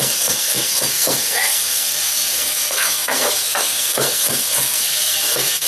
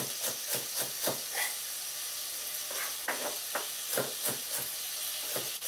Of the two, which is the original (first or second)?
second